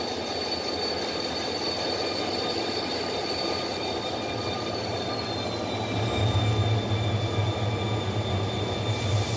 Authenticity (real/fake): real